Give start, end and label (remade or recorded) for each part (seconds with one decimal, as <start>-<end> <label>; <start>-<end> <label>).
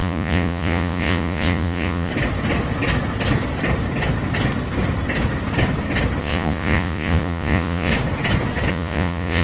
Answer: 0.0-2.1 remade; 2.1-6.2 recorded; 6.2-7.9 remade; 7.9-8.7 recorded; 8.7-9.4 remade